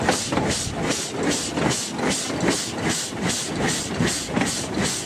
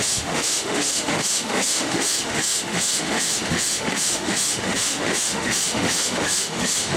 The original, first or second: first